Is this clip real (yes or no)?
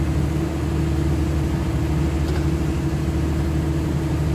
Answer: yes